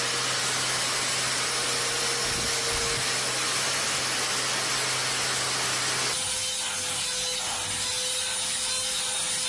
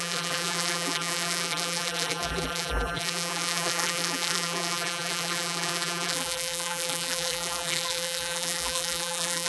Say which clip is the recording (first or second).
first